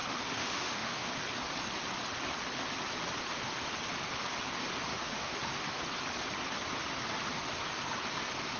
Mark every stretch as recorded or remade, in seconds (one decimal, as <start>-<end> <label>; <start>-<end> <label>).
0.0-1.1 remade; 1.1-4.9 recorded; 4.9-5.8 remade; 5.8-8.6 recorded